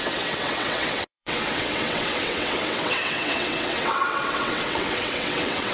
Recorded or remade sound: remade